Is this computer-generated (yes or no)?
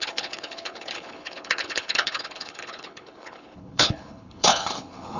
yes